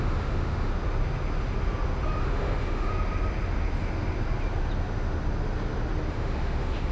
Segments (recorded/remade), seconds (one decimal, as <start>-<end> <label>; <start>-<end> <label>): 0.0-0.7 remade; 0.7-2.2 recorded; 2.2-2.9 remade; 2.9-6.1 recorded; 6.1-6.9 remade